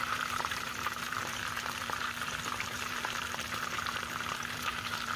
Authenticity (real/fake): fake